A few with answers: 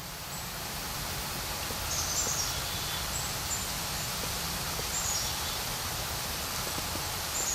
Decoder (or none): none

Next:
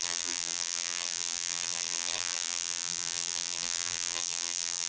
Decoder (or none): vocoder, BigVGAN v2